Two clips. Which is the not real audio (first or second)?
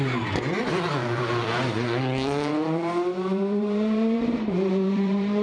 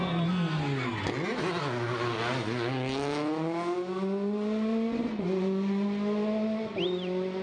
first